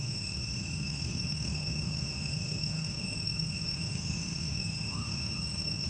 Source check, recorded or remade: remade